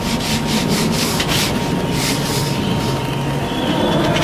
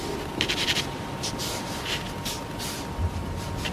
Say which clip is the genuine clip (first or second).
first